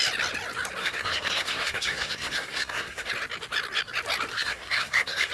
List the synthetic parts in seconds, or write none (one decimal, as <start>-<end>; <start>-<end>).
0.8-3.1; 4.3-5.3